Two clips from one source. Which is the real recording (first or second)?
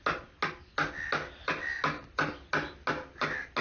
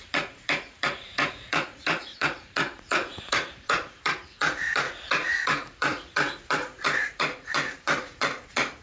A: first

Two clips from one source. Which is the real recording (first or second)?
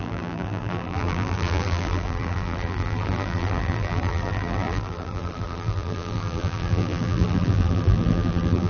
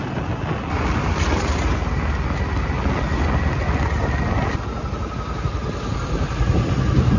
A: second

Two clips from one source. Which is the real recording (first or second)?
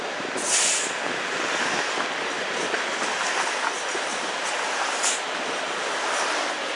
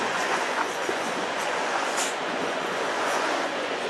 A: first